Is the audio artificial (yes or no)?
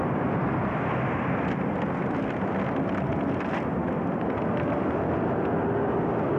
no